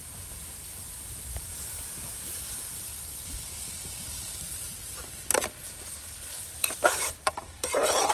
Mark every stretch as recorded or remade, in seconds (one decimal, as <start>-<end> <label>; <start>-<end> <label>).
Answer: 0.0-1.3 recorded; 1.3-2.9 remade; 2.9-6.2 recorded; 6.2-8.1 remade

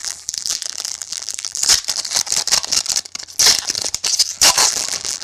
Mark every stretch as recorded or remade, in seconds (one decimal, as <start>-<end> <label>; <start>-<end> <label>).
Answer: 0.0-1.6 remade; 1.6-4.7 recorded; 4.7-5.2 remade

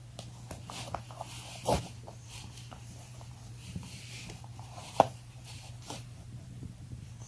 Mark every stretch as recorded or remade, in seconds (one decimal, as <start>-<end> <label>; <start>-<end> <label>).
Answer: 0.0-1.8 recorded; 1.8-7.3 remade

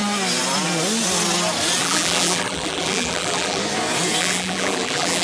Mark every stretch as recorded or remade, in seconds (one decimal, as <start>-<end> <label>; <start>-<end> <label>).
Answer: 0.0-1.8 recorded; 1.8-3.6 remade; 3.6-4.2 recorded; 4.2-5.2 remade

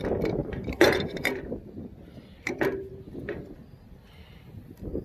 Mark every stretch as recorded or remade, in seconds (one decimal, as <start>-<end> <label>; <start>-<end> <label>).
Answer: 0.0-0.4 recorded; 0.4-1.4 remade; 1.4-5.0 recorded

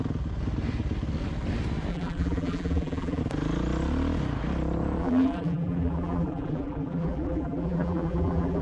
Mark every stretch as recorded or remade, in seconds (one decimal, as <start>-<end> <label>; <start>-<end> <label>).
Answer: 0.0-1.9 recorded; 1.9-3.2 remade; 3.2-5.0 recorded; 5.0-8.6 remade

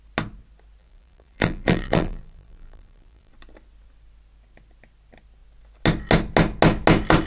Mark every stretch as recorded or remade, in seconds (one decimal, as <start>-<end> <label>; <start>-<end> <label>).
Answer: 0.0-0.8 recorded; 0.8-3.3 remade; 3.3-7.3 recorded

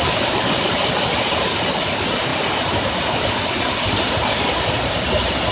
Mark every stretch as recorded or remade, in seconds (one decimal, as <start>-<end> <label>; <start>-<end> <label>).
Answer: 0.0-5.5 recorded